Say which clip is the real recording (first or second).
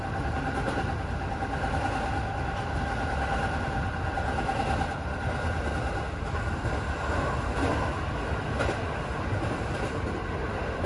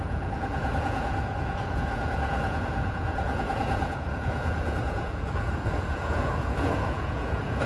first